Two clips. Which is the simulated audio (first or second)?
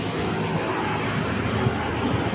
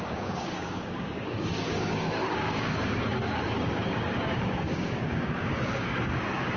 second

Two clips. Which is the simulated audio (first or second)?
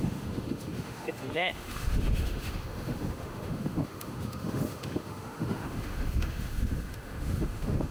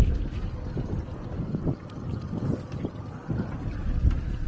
first